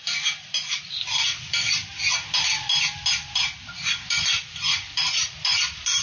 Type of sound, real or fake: real